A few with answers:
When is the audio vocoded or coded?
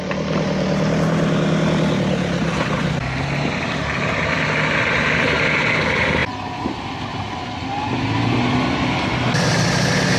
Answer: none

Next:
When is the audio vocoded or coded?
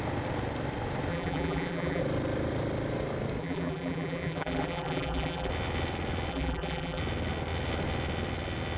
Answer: 1.1-2.0 (vocoder, BigVGAN v2); 3.4-5.5; 6.3-7.0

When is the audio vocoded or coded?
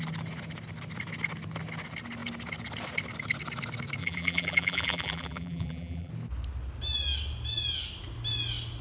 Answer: 4.0-6.1 (vocoder, BigVGAN v2)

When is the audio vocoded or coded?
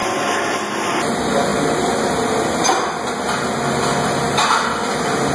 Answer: 0.0-1.0 (vocoder, BigVGAN v2)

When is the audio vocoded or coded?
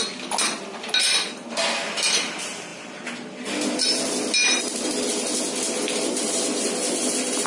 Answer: none